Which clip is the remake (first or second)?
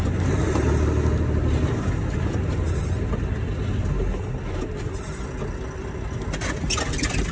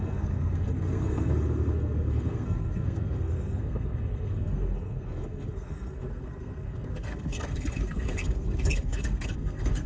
second